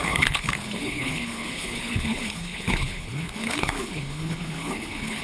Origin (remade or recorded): remade